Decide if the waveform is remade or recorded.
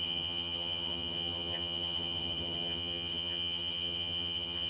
remade